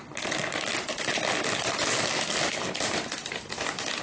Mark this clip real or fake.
real